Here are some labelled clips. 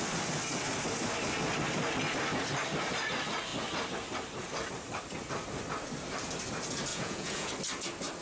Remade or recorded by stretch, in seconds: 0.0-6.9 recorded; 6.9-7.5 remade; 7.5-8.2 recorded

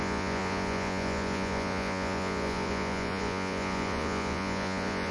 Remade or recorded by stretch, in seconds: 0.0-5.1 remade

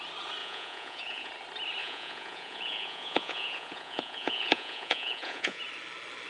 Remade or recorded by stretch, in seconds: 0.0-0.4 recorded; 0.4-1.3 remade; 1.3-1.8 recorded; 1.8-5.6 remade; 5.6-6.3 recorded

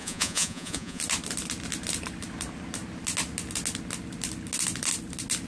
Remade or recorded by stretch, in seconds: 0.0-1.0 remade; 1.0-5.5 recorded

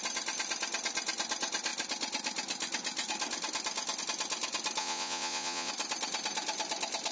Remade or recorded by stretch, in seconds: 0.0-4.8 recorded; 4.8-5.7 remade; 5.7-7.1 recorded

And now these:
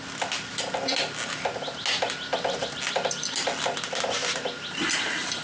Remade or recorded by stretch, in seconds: 0.0-5.4 recorded